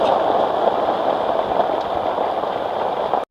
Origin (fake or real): real